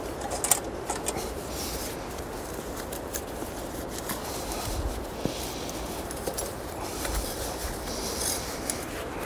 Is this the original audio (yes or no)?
yes